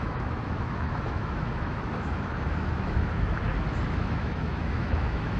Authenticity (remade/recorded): remade